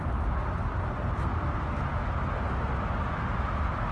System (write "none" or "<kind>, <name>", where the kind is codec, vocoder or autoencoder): none